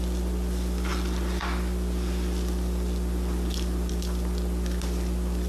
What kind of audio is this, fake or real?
real